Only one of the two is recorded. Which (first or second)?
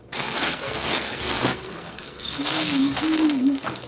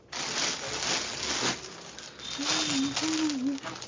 second